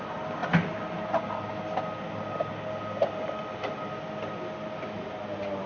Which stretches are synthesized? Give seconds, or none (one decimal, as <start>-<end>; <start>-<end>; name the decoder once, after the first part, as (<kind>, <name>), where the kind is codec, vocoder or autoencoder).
none

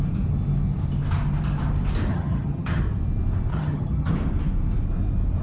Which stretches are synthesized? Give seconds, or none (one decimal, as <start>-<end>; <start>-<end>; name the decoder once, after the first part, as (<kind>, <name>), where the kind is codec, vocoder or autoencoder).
2.1-2.8 (vocoder, HiFi-GAN); 3.5-4.1

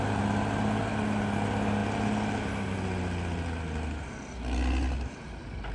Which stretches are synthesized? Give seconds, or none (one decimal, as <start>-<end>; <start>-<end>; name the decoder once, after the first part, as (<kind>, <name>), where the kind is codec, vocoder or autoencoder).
none

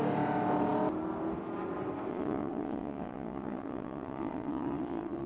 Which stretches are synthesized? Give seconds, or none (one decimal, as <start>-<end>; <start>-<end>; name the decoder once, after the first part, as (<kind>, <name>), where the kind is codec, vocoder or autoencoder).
2.1-5.3 (vocoder, Vocos)

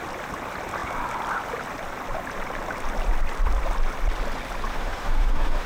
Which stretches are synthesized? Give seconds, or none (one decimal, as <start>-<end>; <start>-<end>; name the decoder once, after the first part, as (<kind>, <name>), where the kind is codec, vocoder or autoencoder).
4.7-5.7 (autoencoder, DAC-VAE)

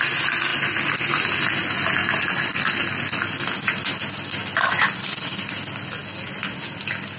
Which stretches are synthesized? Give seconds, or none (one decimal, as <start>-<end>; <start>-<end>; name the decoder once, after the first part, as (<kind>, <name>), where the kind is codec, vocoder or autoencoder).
0.5-1.0 (vocoder, BigVGAN v2); 4.4-5.3